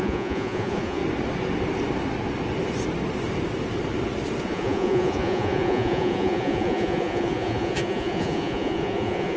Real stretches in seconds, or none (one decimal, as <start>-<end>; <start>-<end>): 1.0-4.4